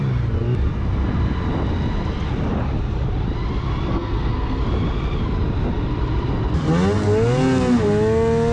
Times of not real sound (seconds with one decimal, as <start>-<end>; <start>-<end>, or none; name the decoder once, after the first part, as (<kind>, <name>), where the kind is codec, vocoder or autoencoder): 3.9-4.6 (codec, SNAC)